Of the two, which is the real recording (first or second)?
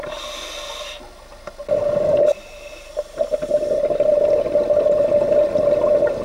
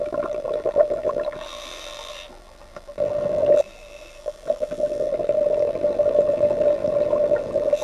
first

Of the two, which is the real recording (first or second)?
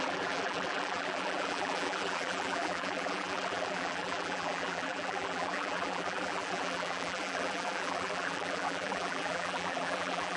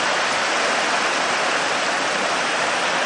second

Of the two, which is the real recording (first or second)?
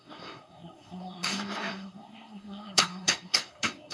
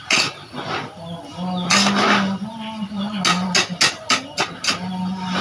second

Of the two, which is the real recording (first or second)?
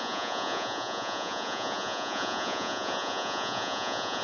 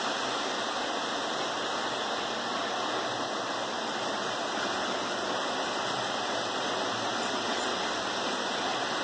second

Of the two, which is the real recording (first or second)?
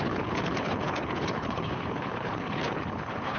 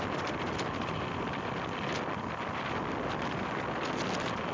second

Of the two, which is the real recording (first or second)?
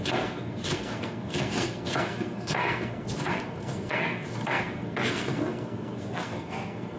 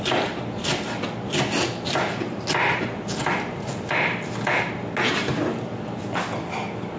second